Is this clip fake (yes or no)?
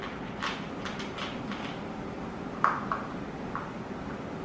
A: no